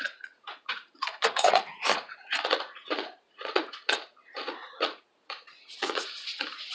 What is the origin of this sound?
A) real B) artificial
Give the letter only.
B